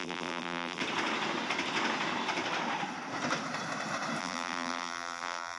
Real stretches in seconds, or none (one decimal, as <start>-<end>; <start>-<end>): 0.8-4.2